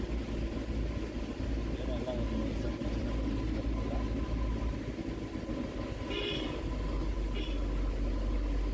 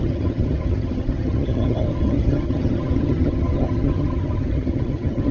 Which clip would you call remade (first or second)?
second